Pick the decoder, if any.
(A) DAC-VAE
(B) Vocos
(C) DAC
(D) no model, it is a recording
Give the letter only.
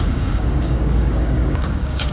C